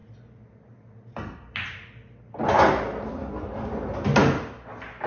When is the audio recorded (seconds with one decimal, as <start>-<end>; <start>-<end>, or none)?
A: 0.0-5.1